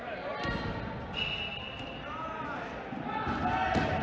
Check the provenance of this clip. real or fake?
real